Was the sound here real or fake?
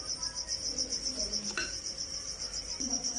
fake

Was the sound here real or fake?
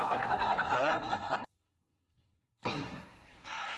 fake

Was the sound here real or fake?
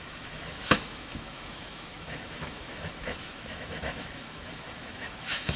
fake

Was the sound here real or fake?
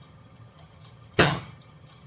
fake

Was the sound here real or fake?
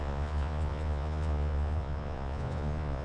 fake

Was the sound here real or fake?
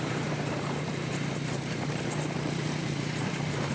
fake